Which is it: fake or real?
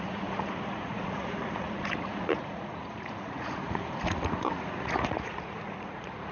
fake